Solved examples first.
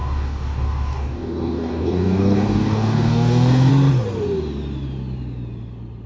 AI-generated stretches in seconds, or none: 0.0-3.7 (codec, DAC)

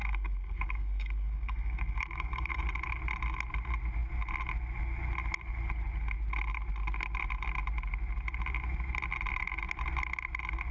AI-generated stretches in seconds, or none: 0.0-2.6 (codec, DAC)

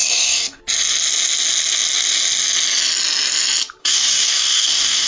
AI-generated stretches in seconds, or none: 0.0-0.6 (codec, DAC); 3.8-5.1

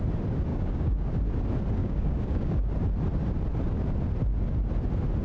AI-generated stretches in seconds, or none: 0.5-1.1 (codec, DAC); 1.8-2.7

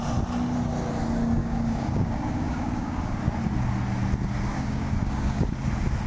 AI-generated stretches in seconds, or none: 1.4-3.2 (codec, DAC); 4.5-5.5